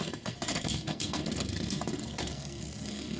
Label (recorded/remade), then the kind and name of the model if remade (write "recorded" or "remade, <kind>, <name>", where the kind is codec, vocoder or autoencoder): remade, codec, SNAC